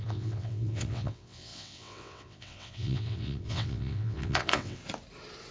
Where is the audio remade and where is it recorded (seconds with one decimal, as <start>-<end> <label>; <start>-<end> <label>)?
0.0-4.8 remade; 4.8-5.5 recorded